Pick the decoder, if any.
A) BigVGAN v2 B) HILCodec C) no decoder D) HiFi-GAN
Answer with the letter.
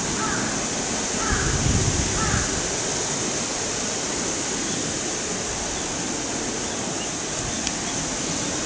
C